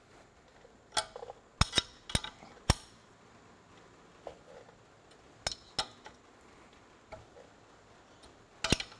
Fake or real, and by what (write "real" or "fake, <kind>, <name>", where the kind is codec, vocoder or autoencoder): real